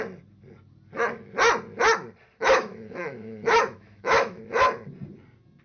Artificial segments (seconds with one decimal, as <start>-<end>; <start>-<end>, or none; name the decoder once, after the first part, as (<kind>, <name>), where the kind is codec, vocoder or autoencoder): 2.4-4.4 (autoencoder, DAC-VAE)